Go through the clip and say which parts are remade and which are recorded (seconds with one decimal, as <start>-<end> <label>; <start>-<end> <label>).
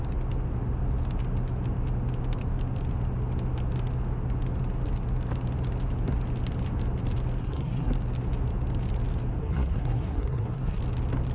0.0-7.4 recorded; 7.4-7.9 remade; 7.9-9.4 recorded; 9.4-10.8 remade; 10.8-11.3 recorded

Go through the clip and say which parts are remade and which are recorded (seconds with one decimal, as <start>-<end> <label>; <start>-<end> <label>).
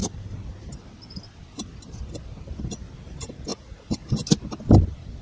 0.0-3.5 recorded; 3.5-4.1 remade; 4.1-5.2 recorded